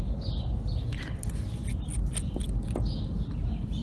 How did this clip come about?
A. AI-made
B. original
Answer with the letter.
B